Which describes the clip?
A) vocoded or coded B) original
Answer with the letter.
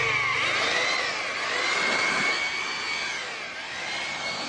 B